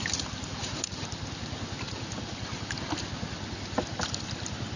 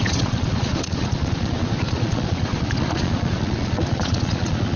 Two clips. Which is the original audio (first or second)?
first